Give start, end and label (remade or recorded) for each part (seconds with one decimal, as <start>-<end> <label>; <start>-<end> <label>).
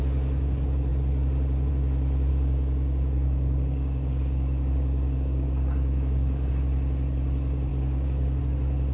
0.0-2.3 recorded; 2.3-6.5 remade; 6.5-7.7 recorded; 7.7-8.4 remade; 8.4-8.9 recorded